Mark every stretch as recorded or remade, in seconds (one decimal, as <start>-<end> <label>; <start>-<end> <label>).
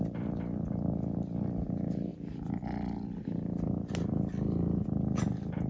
0.0-5.7 recorded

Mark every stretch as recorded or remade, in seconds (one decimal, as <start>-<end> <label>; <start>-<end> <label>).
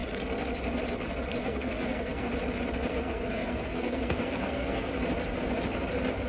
0.0-1.4 recorded; 1.4-2.3 remade; 2.3-2.9 recorded; 2.9-4.9 remade; 4.9-6.3 recorded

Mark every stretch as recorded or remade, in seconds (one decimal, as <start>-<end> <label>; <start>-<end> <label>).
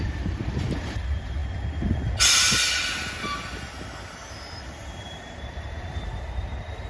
0.0-1.4 remade; 1.4-4.0 recorded; 4.0-6.9 remade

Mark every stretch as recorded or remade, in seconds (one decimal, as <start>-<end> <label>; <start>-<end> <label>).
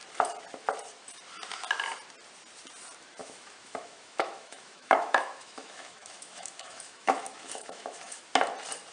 0.0-3.2 recorded; 3.2-8.2 remade; 8.2-8.9 recorded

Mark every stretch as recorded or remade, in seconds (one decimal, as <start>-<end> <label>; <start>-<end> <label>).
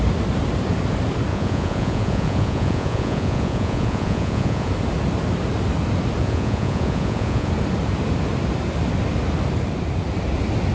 0.0-1.3 recorded; 1.3-4.7 remade; 4.7-6.2 recorded; 6.2-7.5 remade; 7.5-10.7 recorded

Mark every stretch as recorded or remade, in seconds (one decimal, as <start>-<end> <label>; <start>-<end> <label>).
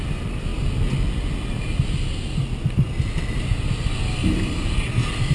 0.0-4.2 recorded; 4.2-4.8 remade; 4.8-5.3 recorded